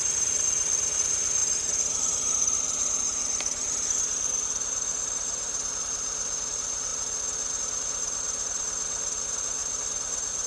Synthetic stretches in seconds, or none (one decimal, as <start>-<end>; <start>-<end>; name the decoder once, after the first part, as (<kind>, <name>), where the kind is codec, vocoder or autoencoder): none